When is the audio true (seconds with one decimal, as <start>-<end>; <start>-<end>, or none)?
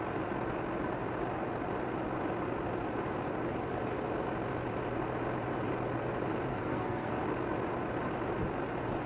0.0-6.5; 7.2-9.1